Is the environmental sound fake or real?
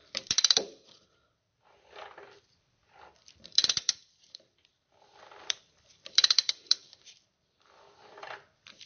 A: fake